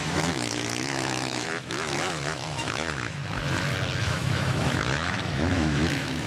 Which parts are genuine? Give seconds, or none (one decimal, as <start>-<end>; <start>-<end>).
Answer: 3.2-4.0